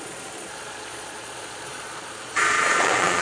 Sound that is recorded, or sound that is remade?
remade